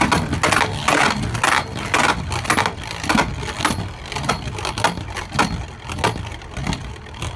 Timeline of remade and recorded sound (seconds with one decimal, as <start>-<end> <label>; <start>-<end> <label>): 0.0-7.4 recorded